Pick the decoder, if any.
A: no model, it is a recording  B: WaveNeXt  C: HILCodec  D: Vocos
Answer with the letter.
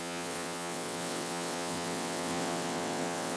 B